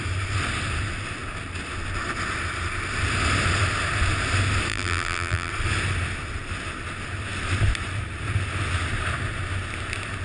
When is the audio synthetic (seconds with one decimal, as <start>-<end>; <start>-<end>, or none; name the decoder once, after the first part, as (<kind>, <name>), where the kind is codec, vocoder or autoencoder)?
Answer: 4.7-5.5 (vocoder, BigVGAN v2)